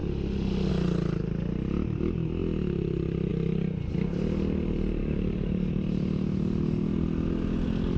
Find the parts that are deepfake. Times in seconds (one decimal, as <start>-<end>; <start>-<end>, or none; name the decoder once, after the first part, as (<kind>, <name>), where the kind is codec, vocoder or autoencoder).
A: 5.0-5.7 (codec, DAC)